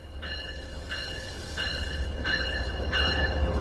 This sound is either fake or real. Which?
fake